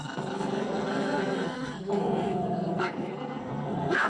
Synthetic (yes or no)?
yes